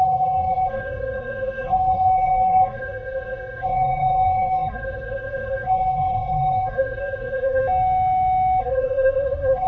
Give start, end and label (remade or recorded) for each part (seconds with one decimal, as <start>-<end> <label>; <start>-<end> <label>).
0.0-7.6 remade; 7.6-8.6 recorded; 8.6-9.7 remade